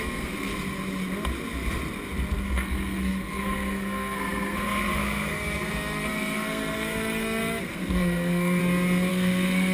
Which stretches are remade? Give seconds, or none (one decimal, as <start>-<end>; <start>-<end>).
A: 0.0-0.5; 2.4-8.6; 9.1-9.7